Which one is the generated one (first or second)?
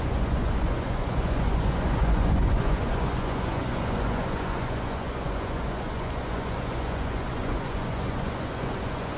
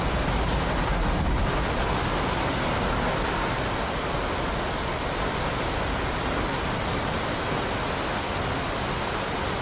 first